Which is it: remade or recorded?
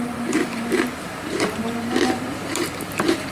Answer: remade